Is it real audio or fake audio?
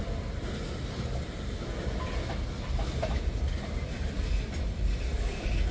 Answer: real